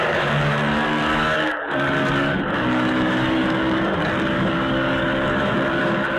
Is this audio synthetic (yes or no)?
yes